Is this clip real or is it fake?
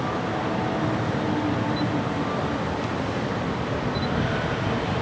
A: real